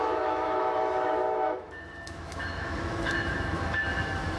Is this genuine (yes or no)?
no